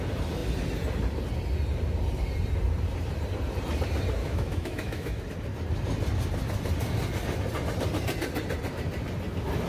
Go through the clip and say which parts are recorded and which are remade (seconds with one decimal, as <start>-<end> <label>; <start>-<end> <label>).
0.0-4.2 recorded; 4.2-5.2 remade; 5.2-9.7 recorded